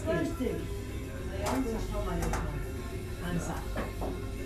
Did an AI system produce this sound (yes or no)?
no